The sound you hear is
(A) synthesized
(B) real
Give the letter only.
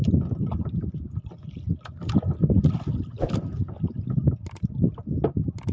B